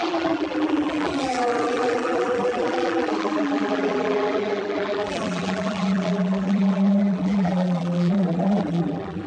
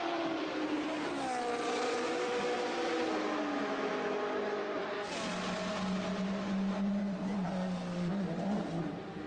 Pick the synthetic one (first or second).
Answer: first